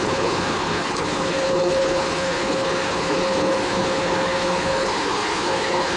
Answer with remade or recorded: remade